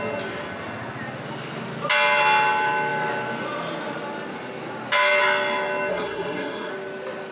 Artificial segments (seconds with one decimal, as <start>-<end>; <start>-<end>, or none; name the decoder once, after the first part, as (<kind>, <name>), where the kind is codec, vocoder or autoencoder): 5.9-6.7 (codec, SNAC)